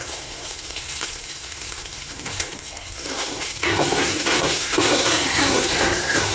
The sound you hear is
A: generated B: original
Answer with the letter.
A